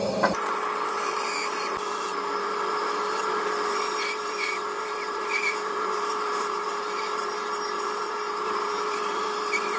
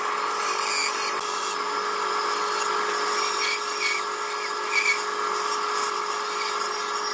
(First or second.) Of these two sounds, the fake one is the first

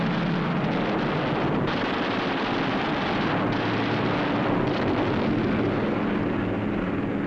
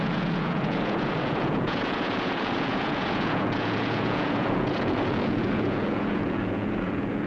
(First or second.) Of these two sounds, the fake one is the second